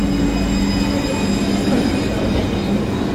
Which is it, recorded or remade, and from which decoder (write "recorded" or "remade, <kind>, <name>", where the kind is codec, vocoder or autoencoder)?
recorded